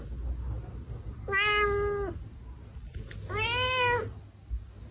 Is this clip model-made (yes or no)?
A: no